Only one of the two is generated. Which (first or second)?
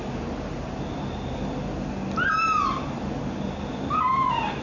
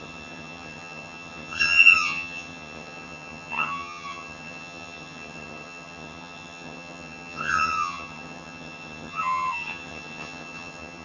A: second